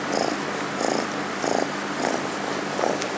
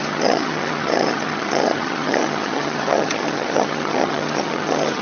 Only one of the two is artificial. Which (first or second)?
second